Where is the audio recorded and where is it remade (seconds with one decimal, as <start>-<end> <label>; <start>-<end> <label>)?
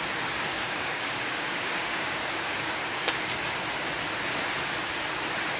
0.0-0.5 recorded; 0.5-3.1 remade; 3.1-5.6 recorded